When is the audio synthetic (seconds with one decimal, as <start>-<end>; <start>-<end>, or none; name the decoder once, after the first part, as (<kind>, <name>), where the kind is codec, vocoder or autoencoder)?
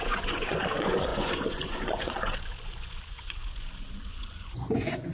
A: 0.0-5.1 (vocoder, Vocos)